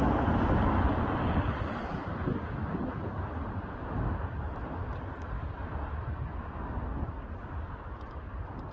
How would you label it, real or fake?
real